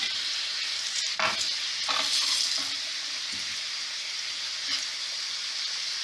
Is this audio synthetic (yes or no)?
no